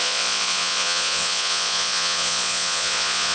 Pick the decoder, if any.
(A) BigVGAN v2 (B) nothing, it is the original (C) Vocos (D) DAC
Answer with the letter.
C